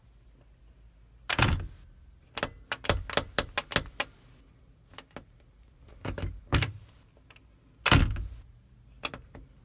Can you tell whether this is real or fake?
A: real